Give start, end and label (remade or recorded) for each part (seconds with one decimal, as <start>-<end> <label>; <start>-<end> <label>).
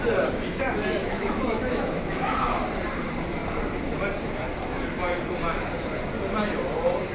0.0-1.0 recorded; 1.0-2.6 remade; 2.6-7.1 recorded